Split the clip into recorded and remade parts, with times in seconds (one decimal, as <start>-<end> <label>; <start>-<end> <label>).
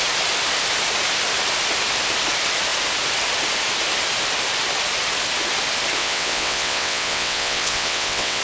0.0-6.0 recorded; 6.0-8.4 remade